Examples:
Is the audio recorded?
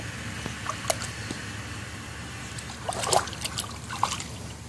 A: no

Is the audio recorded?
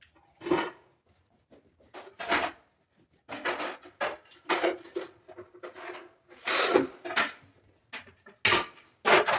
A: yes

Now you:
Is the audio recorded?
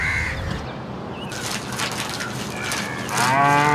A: yes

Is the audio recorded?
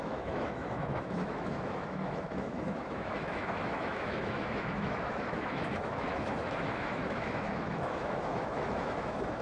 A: no